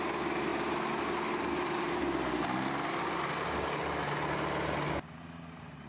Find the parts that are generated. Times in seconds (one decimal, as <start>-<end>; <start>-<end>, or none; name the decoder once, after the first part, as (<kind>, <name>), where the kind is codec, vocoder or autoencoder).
none